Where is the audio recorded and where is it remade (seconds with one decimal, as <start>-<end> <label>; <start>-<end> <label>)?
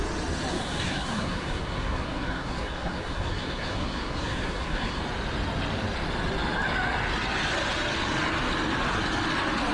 0.0-0.5 recorded; 0.5-5.0 remade; 5.0-9.7 recorded